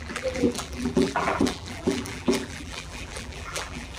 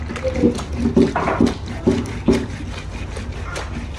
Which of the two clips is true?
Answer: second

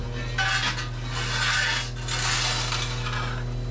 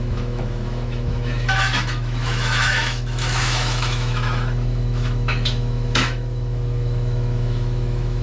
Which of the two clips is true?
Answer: first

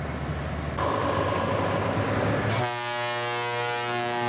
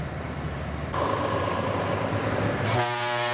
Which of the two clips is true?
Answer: first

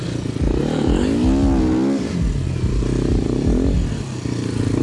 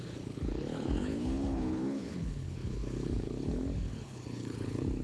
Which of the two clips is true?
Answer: first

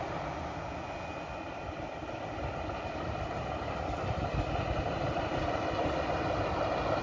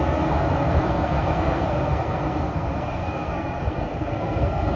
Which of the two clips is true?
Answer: first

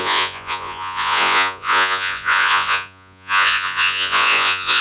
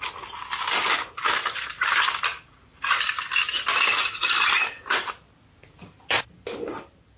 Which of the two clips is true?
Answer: second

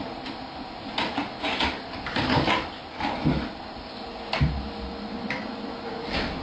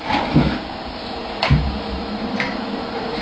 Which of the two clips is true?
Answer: first